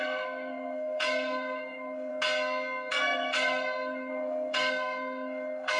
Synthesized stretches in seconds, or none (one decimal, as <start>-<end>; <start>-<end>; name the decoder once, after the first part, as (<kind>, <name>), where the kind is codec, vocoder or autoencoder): 0.0-2.1 (codec, SNAC); 2.9-5.8